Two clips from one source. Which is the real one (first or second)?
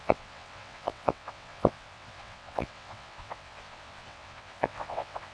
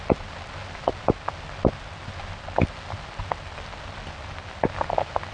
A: second